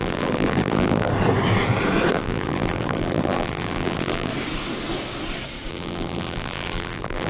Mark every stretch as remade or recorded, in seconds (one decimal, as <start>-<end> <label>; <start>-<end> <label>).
0.0-1.1 remade; 1.1-2.1 recorded; 2.1-4.3 remade; 4.3-5.7 recorded; 5.7-7.3 remade